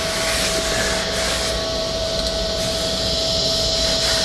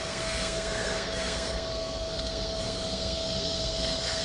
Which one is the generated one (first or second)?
second